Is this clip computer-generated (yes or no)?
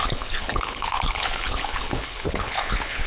yes